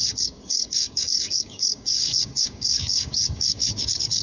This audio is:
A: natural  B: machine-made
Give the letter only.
B